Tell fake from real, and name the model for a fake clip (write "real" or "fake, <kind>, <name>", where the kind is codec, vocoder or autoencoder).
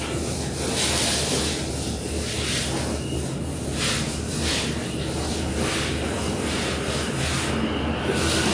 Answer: real